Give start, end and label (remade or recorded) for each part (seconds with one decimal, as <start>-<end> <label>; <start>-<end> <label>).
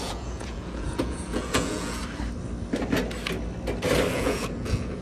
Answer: 0.0-2.0 remade; 2.0-4.1 recorded; 4.1-5.0 remade